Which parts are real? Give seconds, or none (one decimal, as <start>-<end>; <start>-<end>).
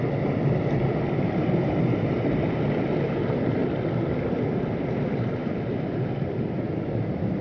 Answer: 0.0-7.4